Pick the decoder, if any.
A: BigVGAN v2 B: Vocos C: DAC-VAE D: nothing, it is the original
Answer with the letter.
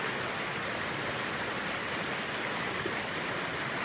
D